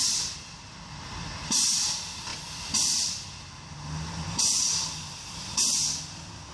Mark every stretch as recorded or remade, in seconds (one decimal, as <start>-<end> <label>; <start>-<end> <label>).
0.0-6.5 recorded

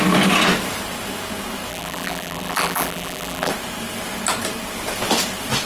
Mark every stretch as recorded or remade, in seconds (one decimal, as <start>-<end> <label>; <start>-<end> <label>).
0.0-1.7 recorded; 1.7-3.5 remade; 3.5-5.7 recorded

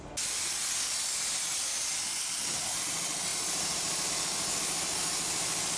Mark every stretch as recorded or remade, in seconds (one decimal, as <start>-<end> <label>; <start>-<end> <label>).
0.0-3.3 recorded; 3.3-4.1 remade; 4.1-5.8 recorded